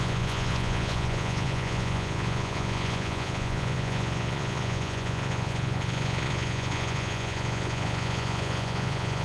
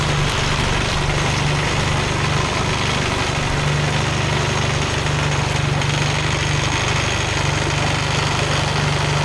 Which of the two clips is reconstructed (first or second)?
first